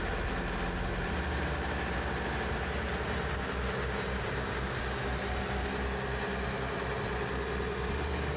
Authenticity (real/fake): real